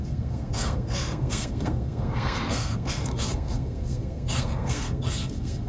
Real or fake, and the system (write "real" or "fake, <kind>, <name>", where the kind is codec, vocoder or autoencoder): fake, codec, SNAC